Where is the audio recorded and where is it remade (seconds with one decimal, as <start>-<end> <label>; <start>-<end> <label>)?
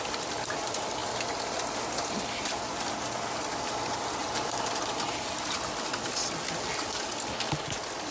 0.0-4.2 recorded; 4.2-4.9 remade; 4.9-8.1 recorded